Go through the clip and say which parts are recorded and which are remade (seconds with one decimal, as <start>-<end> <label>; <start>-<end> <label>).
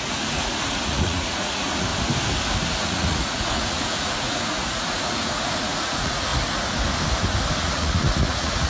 0.0-1.9 remade; 1.9-2.8 recorded; 2.8-6.3 remade; 6.3-7.6 recorded; 7.6-8.7 remade